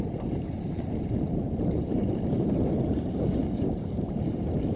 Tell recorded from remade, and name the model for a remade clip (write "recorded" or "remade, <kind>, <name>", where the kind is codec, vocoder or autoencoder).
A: remade, vocoder, BigVGAN v2